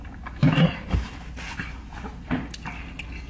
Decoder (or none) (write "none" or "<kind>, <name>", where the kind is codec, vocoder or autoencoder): none